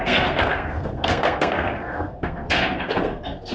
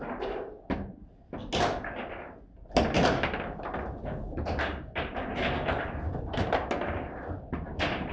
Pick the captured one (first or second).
second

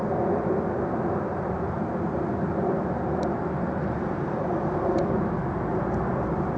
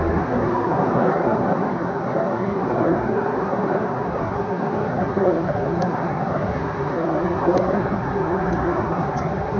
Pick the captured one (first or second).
first